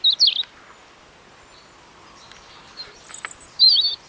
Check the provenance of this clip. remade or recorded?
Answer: recorded